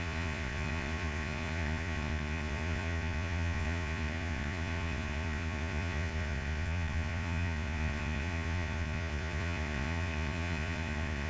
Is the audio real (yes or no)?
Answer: no